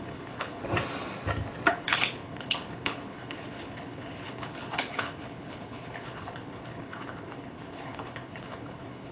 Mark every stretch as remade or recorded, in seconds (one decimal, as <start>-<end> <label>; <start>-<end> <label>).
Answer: 0.0-0.6 remade; 0.6-1.7 recorded; 1.7-9.1 remade